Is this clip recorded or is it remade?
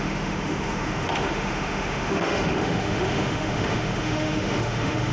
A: remade